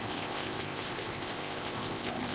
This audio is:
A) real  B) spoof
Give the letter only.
B